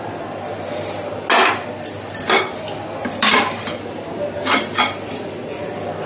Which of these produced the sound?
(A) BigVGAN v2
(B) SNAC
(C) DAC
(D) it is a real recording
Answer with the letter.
D